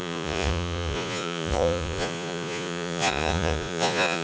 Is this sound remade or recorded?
remade